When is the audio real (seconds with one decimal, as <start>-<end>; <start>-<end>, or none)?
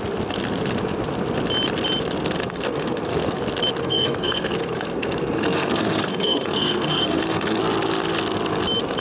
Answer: 0.0-2.4; 3.4-3.8; 7.6-9.0